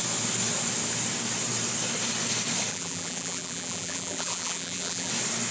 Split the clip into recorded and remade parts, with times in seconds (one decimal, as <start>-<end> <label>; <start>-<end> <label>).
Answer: 0.0-2.7 recorded; 2.7-5.1 remade; 5.1-5.5 recorded